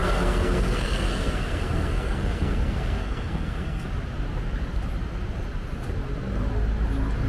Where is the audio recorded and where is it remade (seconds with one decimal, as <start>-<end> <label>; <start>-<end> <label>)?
0.0-3.9 remade; 3.9-7.3 recorded